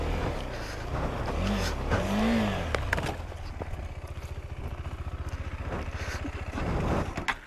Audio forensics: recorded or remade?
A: recorded